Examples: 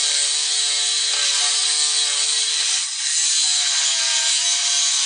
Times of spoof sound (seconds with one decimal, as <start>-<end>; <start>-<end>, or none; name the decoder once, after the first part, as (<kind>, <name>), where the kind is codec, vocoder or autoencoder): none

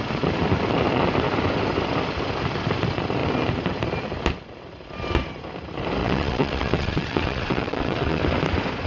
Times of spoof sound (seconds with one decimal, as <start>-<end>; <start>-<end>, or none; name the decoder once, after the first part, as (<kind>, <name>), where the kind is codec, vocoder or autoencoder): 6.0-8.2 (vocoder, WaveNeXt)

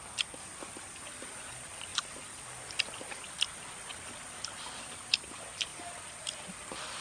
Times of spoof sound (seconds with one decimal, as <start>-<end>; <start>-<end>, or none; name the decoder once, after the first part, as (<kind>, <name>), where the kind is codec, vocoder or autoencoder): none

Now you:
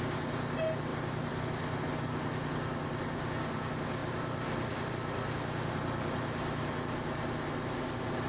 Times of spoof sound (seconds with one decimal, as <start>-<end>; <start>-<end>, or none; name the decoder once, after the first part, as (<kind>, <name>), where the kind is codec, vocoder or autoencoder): none